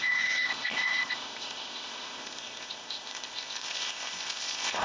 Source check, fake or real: fake